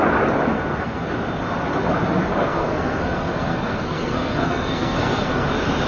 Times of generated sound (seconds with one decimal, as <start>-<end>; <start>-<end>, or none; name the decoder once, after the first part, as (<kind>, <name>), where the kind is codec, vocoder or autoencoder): 0.5-1.1 (codec, SNAC); 2.3-5.5